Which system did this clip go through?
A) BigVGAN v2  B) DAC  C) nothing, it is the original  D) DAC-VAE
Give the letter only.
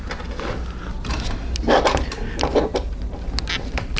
C